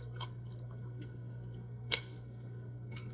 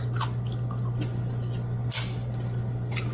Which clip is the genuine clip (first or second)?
second